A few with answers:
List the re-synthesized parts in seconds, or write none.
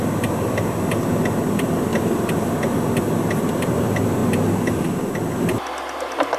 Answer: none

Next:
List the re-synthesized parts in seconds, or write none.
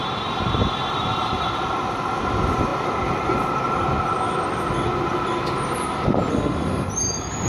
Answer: 6.3-6.9 (autoencoder, DAC-VAE)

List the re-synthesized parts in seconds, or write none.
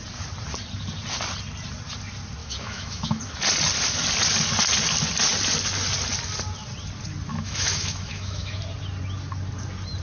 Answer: 2.4-3.2 (autoencoder, DAC-VAE); 7.3-8.6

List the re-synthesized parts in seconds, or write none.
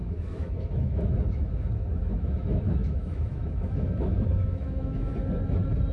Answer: 0.0-5.1 (autoencoder, DAC-VAE)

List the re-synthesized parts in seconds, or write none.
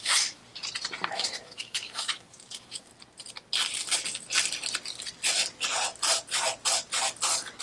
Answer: 0.0-0.4 (autoencoder, DAC-VAE); 1.1-2.9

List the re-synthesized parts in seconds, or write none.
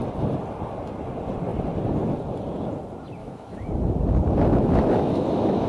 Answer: 3.2-3.7 (autoencoder, DAC-VAE); 4.5-5.7